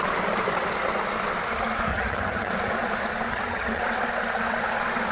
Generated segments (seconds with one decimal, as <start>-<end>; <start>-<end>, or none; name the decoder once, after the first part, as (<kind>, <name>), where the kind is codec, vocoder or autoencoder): 1.9-2.5 (vocoder, HiFi-GAN); 3.3-3.8